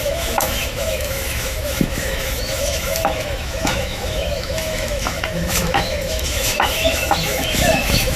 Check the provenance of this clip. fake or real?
fake